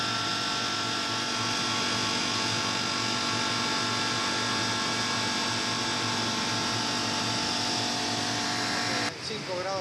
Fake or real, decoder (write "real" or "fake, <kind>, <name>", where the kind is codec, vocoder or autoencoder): real